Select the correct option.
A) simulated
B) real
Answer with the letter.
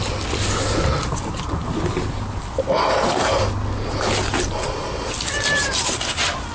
B